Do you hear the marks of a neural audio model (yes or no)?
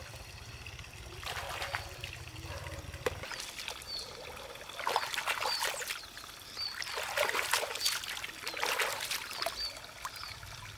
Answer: no